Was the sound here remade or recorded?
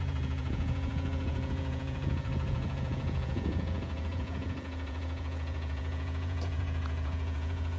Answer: remade